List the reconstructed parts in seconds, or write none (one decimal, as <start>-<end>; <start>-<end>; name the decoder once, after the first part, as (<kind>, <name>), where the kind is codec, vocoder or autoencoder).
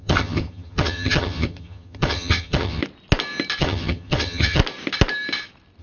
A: 0.0-2.8 (vocoder, HiFi-GAN); 3.6-4.6